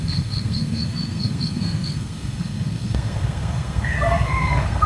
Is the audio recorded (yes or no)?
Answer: no